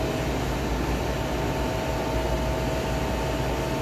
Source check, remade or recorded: recorded